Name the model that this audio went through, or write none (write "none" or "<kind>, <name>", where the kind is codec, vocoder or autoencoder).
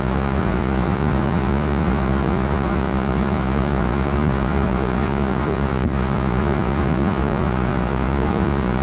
vocoder, Vocos